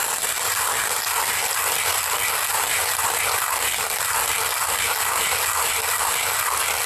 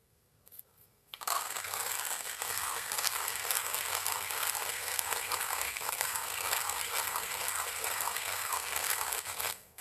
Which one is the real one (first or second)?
first